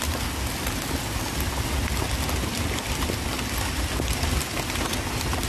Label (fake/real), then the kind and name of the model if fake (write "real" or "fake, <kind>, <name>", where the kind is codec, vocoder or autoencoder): real